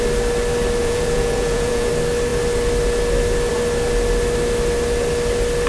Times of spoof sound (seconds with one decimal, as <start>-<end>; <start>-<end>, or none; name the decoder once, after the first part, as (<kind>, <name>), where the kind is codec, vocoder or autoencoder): 0.8-1.9 (vocoder, Vocos)